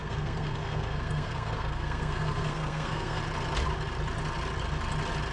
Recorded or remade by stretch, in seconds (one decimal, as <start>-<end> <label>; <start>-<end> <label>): 0.0-3.2 remade; 3.2-5.3 recorded